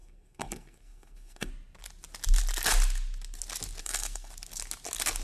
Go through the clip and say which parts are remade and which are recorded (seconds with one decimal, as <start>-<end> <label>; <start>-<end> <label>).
0.0-1.5 remade; 1.5-3.8 recorded; 3.8-4.3 remade; 4.3-5.2 recorded